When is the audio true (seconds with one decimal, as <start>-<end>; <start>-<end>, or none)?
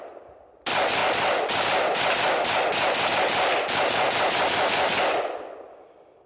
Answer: 0.0-1.0; 2.6-6.3